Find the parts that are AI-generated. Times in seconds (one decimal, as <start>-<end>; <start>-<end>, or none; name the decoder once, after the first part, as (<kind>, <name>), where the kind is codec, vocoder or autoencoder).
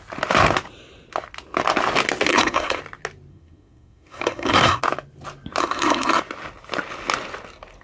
2.3-2.8 (codec, SNAC); 3.3-4.8; 5.6-6.2